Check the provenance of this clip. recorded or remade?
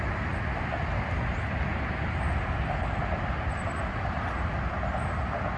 recorded